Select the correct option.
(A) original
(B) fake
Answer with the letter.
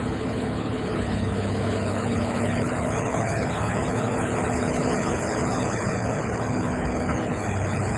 B